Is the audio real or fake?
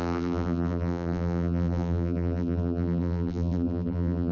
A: fake